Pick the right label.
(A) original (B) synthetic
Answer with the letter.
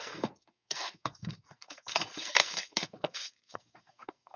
B